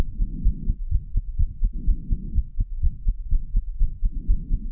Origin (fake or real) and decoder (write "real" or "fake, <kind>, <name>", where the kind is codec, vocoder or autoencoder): real